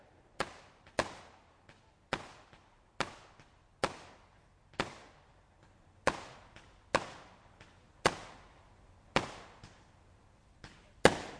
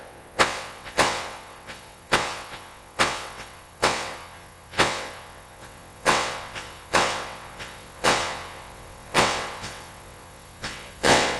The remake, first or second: second